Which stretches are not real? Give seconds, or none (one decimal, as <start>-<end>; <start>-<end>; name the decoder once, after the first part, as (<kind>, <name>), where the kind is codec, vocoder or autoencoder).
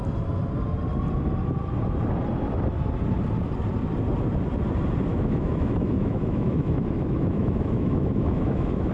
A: 5.1-8.9 (autoencoder, DAC-VAE)